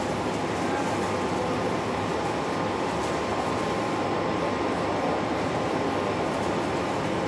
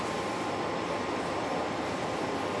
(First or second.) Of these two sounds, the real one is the first